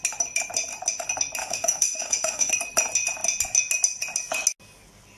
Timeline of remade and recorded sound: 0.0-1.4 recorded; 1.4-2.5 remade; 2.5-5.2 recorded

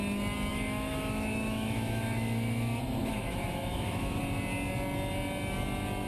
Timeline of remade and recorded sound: 0.0-0.5 recorded; 0.5-4.2 remade; 4.2-6.1 recorded

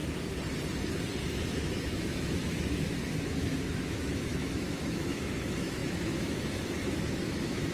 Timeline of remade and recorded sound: 0.0-1.2 recorded; 1.2-7.7 remade